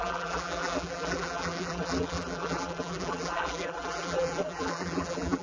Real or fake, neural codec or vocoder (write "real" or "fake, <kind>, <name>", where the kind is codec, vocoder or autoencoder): fake, vocoder, BigVGAN v2